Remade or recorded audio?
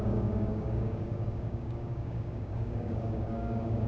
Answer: remade